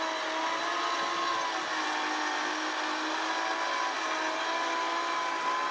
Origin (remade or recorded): recorded